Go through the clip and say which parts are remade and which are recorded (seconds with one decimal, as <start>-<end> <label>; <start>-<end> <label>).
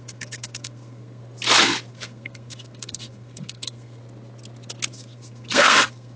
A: 0.0-1.2 remade; 1.2-1.9 recorded; 1.9-4.0 remade; 4.0-4.9 recorded; 4.9-6.2 remade